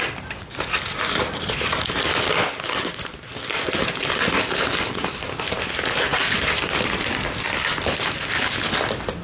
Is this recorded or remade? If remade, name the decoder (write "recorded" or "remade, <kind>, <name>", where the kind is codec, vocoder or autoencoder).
recorded